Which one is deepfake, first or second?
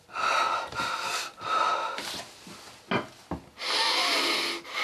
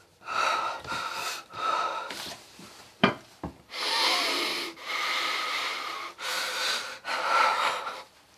second